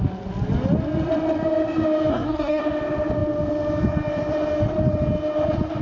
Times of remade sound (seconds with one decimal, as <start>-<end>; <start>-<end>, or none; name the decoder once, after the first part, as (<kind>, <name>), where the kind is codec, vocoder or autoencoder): 2.1-2.6 (codec, SNAC)